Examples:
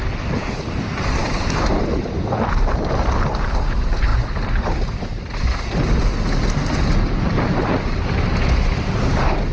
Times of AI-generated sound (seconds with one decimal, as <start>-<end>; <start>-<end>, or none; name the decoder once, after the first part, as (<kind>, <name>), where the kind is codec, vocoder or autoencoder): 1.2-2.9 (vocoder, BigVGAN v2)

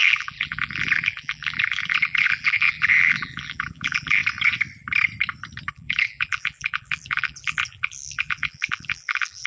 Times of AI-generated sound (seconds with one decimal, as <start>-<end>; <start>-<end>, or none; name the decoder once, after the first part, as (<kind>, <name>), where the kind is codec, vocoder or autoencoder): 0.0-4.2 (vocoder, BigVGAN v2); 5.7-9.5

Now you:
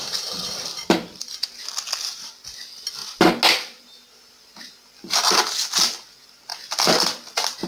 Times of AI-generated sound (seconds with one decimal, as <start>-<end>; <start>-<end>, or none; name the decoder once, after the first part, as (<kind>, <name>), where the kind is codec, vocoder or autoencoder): 0.7-2.5 (vocoder, BigVGAN v2)